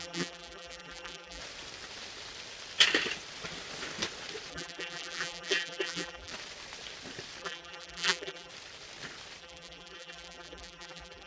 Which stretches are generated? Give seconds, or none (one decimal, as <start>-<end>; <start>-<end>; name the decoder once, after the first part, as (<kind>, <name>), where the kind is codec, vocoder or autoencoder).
0.0-1.4 (vocoder, BigVGAN v2); 4.5-6.3; 7.4-8.5; 9.4-11.3